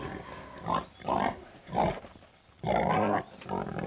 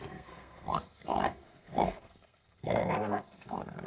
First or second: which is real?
first